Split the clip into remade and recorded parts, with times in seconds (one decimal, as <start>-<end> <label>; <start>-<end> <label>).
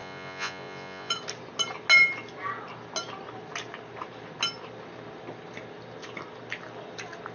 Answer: 0.0-1.1 remade; 1.1-7.3 recorded